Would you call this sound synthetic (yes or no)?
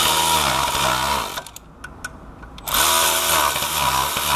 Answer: no